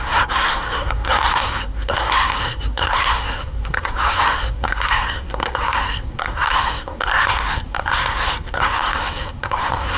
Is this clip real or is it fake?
fake